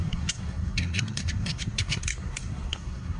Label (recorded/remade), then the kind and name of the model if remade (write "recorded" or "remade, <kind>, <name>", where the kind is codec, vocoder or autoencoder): remade, codec, SNAC